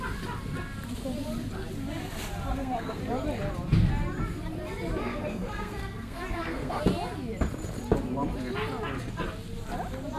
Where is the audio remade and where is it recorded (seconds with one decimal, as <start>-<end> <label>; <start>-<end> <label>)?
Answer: 0.0-2.5 recorded; 2.5-3.0 remade; 3.0-5.0 recorded; 5.0-6.8 remade; 6.8-10.2 recorded